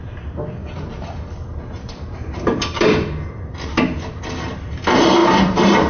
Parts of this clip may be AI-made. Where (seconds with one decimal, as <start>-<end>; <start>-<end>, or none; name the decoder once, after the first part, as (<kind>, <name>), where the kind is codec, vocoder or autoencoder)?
0.6-2.9 (vocoder, BigVGAN v2); 5.2-5.9